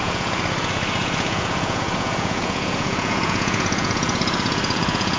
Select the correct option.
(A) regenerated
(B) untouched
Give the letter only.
A